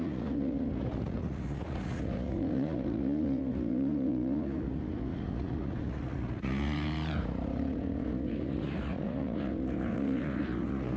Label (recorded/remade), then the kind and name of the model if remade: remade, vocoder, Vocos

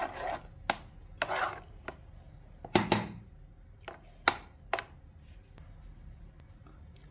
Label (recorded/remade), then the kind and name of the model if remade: recorded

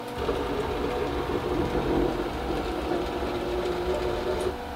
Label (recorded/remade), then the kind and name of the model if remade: recorded